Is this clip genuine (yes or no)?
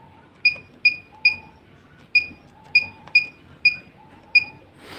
yes